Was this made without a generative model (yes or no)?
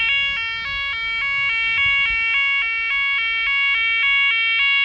yes